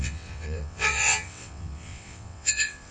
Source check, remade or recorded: remade